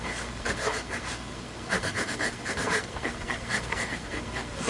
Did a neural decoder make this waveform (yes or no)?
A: yes